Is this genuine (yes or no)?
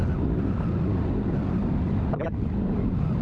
yes